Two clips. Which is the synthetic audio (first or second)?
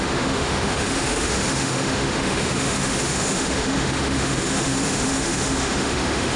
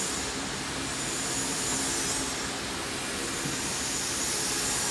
first